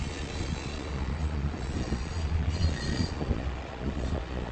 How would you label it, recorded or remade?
remade